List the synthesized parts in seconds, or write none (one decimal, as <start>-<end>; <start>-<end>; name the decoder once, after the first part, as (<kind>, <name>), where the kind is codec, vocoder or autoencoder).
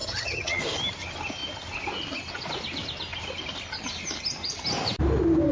0.0-0.6 (vocoder, HiFi-GAN)